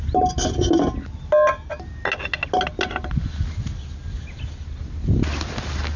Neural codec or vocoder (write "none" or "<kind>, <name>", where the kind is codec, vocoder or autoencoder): none